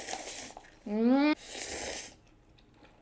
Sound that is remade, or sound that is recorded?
recorded